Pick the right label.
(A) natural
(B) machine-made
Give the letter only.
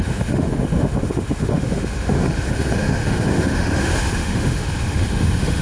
B